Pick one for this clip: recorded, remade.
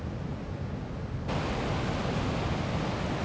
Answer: recorded